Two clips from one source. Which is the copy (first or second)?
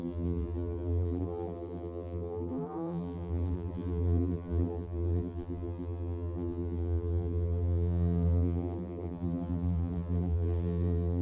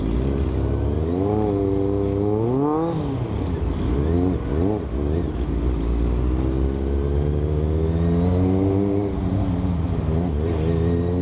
first